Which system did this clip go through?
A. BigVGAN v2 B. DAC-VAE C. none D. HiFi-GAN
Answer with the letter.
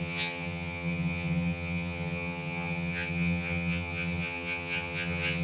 D